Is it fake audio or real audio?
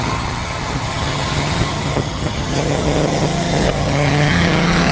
fake